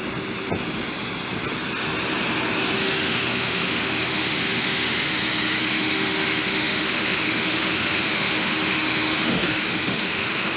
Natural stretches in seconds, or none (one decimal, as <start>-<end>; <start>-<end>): 0.0-2.8; 5.2-5.7